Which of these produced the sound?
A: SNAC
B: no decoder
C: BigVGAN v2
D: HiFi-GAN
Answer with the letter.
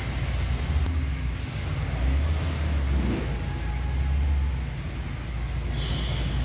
B